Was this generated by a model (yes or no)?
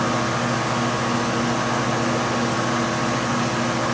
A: no